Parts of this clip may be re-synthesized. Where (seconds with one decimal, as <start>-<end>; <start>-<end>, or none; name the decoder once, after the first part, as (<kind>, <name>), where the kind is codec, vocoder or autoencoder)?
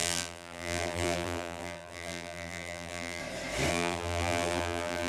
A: 0.0-3.2 (vocoder, BigVGAN v2); 3.7-5.1